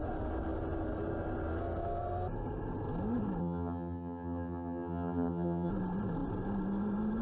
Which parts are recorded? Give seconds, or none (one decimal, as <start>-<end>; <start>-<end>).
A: 0.0-3.4; 5.7-7.2

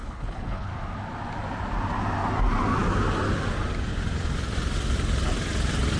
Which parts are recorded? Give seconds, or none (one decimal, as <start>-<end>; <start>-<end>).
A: 0.7-6.0

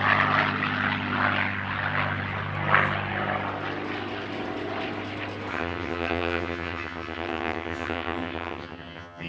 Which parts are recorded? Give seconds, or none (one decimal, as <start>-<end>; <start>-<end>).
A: 0.0-5.5